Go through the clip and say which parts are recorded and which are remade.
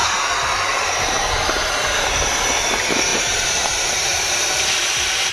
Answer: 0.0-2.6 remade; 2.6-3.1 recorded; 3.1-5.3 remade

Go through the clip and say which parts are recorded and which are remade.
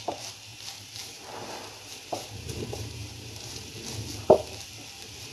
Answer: 0.0-0.5 recorded; 0.5-3.7 remade; 3.7-5.3 recorded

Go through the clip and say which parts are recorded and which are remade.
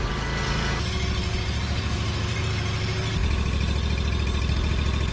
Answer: 0.0-1.2 recorded; 1.2-2.5 remade; 2.5-5.1 recorded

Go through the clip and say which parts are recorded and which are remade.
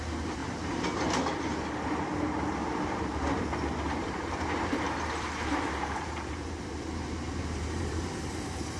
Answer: 0.0-0.4 recorded; 0.4-1.0 remade; 1.0-4.0 recorded; 4.0-8.8 remade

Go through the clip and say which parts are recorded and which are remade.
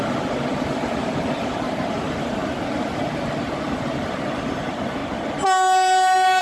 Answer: 0.0-5.0 remade; 5.0-6.4 recorded